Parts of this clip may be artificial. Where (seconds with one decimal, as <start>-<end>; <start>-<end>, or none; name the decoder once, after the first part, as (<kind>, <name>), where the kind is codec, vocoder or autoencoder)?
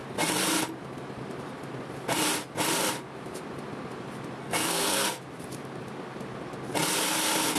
4.4-5.2 (codec, SNAC)